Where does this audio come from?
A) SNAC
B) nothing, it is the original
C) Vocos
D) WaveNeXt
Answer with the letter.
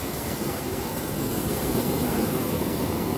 A